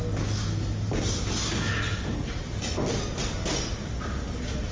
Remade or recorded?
recorded